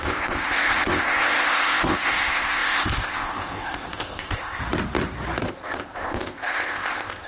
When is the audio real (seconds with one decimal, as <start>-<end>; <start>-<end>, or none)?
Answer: 4.6-5.4